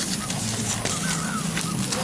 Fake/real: real